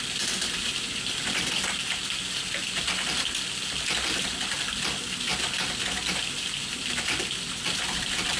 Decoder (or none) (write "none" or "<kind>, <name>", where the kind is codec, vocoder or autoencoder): vocoder, BigVGAN v2